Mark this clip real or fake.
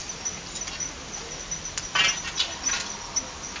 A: real